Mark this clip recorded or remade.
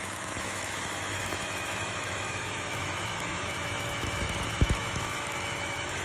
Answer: remade